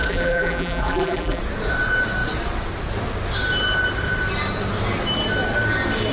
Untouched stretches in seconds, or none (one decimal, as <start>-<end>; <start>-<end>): 1.4-6.1